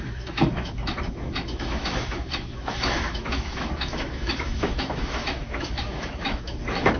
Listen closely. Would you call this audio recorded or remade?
remade